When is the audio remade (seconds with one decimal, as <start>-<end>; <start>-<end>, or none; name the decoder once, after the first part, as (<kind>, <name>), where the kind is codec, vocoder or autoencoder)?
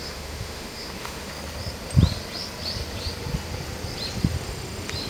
0.0-1.3 (autoencoder, DAC-VAE)